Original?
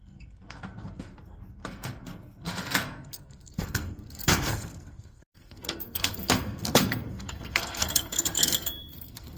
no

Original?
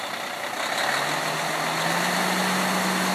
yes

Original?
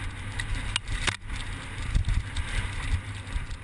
yes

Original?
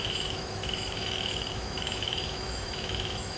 no